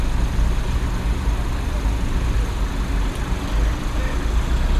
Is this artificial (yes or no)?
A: no